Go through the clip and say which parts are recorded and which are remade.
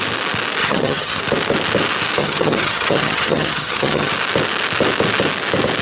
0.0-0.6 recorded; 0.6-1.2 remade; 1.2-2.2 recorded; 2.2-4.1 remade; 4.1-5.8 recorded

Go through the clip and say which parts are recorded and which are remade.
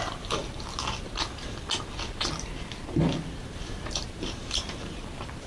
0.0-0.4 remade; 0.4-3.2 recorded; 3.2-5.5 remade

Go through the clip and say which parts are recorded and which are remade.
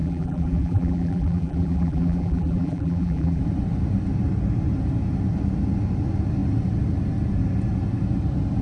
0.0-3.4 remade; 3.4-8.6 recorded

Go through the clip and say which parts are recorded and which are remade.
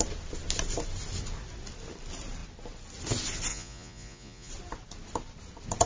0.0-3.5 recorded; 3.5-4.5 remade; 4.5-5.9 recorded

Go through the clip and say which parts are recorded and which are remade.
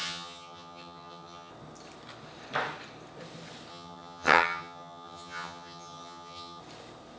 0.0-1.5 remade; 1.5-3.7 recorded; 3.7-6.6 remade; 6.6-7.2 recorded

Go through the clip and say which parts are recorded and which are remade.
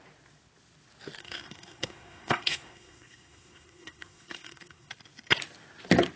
0.0-1.2 recorded; 1.2-4.9 remade; 4.9-6.2 recorded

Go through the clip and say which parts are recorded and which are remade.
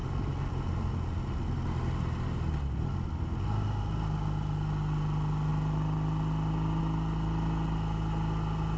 0.0-8.8 recorded